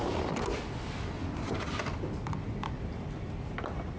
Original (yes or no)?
yes